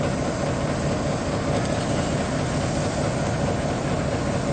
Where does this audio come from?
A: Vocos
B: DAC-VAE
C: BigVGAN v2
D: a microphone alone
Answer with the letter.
D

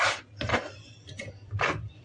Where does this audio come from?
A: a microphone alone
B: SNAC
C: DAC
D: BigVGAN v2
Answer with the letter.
D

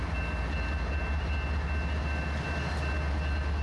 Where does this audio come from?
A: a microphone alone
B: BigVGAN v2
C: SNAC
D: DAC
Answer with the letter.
A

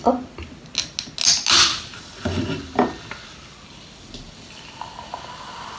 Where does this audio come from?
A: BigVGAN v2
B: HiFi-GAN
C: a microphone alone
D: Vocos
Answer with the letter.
C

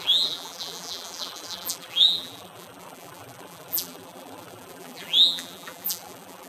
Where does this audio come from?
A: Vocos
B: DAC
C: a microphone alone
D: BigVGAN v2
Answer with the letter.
D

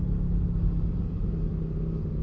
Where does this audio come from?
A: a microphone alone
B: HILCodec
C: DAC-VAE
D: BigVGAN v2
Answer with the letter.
A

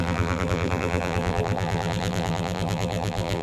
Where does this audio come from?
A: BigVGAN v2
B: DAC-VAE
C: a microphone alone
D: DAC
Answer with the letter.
A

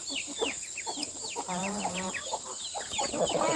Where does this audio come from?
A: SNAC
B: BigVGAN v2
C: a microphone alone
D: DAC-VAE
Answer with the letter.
B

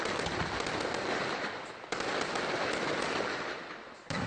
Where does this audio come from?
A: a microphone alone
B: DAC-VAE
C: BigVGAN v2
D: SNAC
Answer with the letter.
A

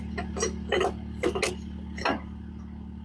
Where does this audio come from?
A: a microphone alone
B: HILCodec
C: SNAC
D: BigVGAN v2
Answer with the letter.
A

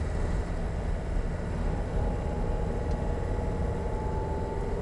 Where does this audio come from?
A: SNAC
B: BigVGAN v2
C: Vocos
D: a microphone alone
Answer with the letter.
D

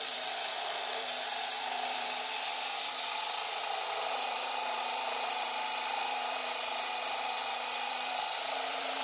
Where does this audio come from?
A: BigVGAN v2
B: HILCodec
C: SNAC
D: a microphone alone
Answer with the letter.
A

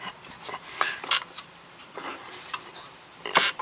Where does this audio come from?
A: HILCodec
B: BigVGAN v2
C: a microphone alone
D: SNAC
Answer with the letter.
B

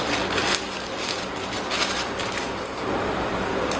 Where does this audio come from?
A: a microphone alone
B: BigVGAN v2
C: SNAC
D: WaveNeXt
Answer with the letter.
A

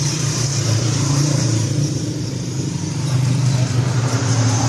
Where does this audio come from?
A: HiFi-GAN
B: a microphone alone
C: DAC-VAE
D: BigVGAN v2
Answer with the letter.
D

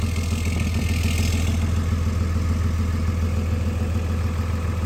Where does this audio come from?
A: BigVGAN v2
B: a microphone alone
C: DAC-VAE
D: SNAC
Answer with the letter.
B